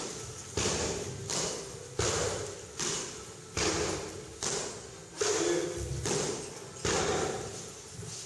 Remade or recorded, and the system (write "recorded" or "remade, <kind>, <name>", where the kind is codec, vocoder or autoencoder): recorded